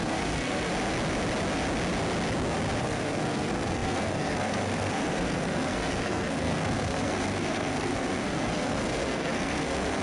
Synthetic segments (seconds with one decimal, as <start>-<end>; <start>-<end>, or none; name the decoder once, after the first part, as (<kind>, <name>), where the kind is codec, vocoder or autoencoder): 0.0-0.7 (codec, SNAC); 2.8-10.0